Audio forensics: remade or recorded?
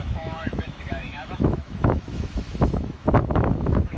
remade